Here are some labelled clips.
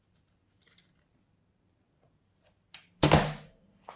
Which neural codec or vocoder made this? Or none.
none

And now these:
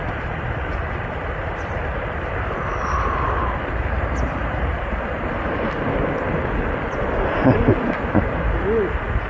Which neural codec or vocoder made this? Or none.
vocoder, BigVGAN v2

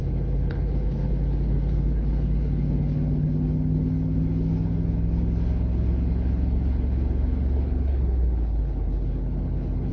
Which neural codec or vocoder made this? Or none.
codec, HILCodec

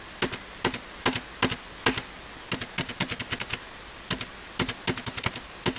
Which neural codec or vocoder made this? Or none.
none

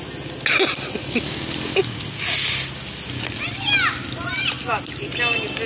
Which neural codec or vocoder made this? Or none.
none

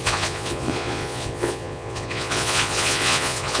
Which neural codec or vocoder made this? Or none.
vocoder, Vocos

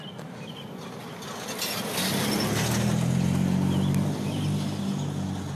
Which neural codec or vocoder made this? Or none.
none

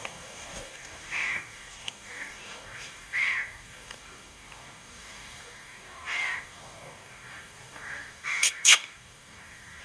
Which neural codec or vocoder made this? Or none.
codec, DAC